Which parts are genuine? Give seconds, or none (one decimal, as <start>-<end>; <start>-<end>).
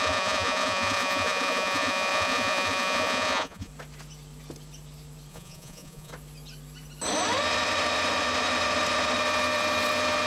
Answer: 3.7-5.3; 6.1-10.3